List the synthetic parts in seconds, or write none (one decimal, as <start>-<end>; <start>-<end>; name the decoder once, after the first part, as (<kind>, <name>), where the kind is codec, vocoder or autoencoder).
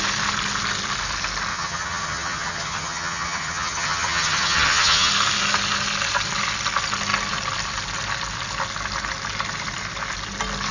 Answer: 1.5-5.1 (vocoder, HiFi-GAN)